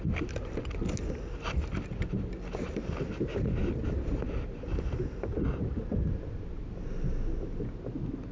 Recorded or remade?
recorded